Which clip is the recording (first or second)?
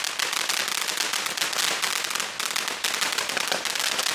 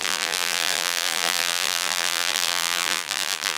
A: first